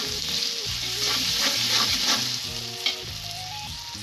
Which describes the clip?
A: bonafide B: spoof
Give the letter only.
A